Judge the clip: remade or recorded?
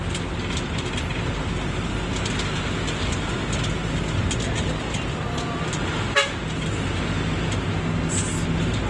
recorded